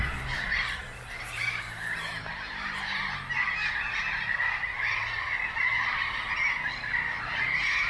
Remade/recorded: recorded